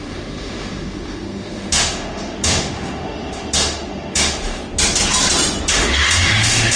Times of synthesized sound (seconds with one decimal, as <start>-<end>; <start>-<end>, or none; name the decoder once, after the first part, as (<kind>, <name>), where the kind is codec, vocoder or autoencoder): 0.0-4.6 (autoencoder, DAC-VAE); 5.7-6.8